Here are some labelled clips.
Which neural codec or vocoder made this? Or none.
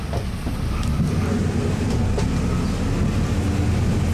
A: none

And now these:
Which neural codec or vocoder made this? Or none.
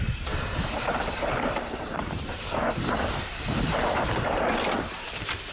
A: vocoder, BigVGAN v2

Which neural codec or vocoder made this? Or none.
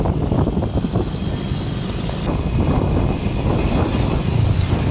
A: none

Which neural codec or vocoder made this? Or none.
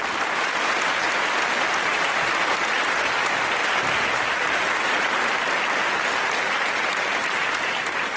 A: vocoder, BigVGAN v2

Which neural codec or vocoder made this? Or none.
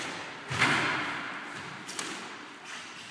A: none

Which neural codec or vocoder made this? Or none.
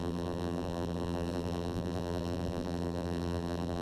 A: vocoder, BigVGAN v2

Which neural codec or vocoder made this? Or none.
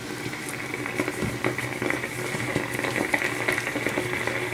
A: none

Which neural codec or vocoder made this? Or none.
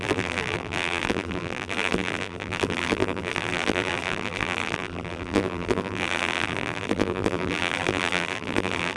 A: vocoder, BigVGAN v2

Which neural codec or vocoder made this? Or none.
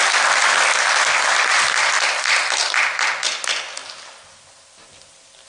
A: none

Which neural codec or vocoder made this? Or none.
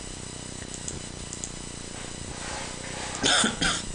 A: none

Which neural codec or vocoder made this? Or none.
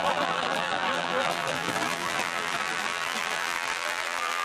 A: vocoder, BigVGAN v2